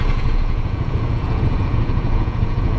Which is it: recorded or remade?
remade